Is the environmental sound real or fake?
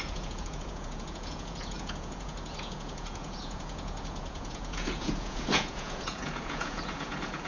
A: fake